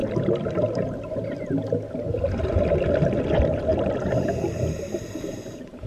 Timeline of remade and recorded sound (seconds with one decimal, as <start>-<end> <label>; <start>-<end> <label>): 0.0-3.2 recorded; 3.2-3.7 remade; 3.7-4.7 recorded; 4.7-5.9 remade